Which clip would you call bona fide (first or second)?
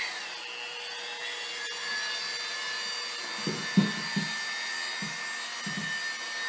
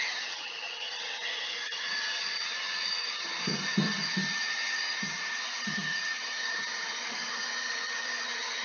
first